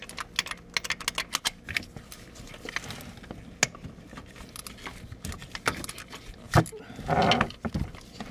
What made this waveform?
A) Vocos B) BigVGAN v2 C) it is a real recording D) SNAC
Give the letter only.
C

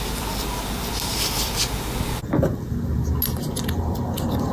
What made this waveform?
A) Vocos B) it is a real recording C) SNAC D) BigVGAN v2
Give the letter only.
B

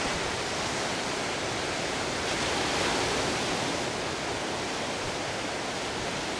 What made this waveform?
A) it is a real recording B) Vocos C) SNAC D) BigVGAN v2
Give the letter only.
A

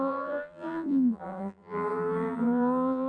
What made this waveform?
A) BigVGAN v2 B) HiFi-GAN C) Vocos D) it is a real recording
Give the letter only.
A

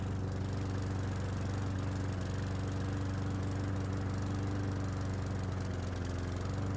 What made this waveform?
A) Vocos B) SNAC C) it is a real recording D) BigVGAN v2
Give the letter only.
C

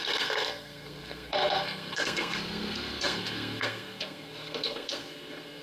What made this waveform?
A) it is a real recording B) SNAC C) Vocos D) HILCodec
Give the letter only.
B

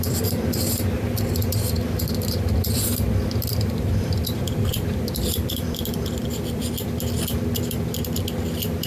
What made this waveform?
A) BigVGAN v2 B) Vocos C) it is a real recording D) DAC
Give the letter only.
A